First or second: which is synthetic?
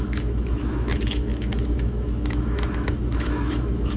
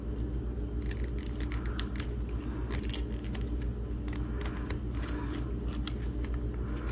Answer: first